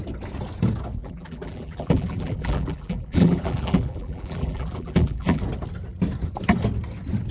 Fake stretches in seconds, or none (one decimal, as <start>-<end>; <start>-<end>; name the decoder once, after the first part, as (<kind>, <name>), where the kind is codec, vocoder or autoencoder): 1.0-5.4 (vocoder, BigVGAN v2)